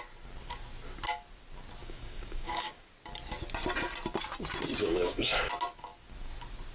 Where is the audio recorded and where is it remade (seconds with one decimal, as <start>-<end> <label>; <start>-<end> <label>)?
0.0-1.8 recorded; 1.8-2.9 remade; 2.9-4.8 recorded; 4.8-5.5 remade; 5.5-6.7 recorded